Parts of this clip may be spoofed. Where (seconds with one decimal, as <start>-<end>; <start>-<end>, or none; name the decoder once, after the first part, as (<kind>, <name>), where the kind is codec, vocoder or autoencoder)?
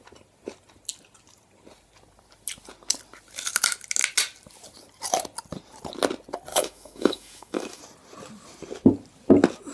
6.5-7.8 (autoencoder, DAC-VAE)